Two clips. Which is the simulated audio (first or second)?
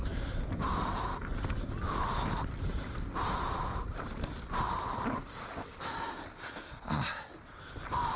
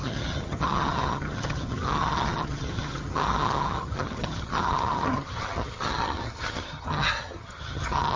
second